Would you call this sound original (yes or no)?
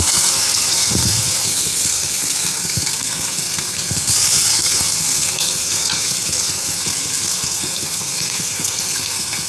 no